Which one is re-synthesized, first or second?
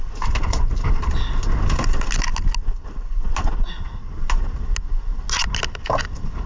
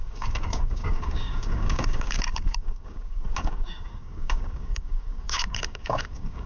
second